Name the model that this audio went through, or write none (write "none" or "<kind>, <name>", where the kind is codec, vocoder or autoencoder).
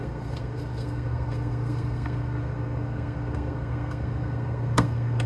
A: codec, SNAC